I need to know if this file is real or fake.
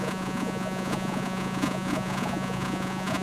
fake